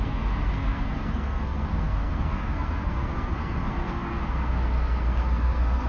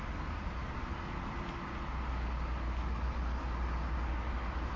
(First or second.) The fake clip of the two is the first